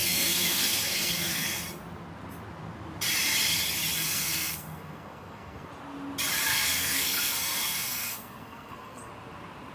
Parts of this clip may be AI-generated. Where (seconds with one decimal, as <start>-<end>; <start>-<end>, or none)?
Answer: 0.0-1.6; 4.0-5.7; 6.5-9.1